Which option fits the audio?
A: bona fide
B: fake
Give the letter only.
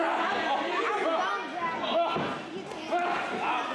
A